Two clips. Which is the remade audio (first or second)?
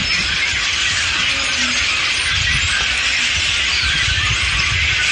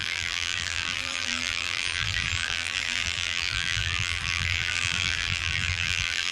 second